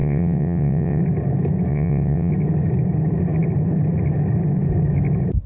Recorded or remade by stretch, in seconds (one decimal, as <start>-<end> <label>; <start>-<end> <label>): 0.0-1.0 remade; 1.0-1.7 recorded; 1.7-2.3 remade; 2.3-5.5 recorded